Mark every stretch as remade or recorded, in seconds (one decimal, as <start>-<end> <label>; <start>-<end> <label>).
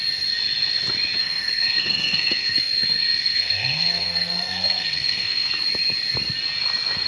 0.0-1.2 recorded; 1.2-5.5 remade; 5.5-7.1 recorded